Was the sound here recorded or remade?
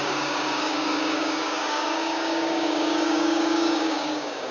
remade